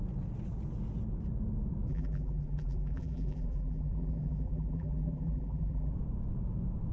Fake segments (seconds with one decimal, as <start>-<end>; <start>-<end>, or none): 1.9-5.9